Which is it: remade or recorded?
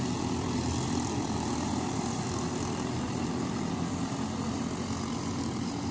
recorded